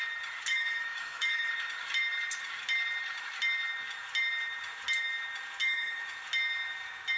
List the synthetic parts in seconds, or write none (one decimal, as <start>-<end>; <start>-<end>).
0.5-1.5; 5.6-6.1